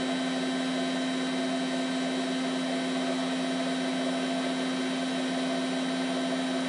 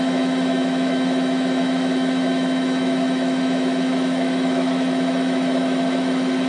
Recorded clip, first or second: first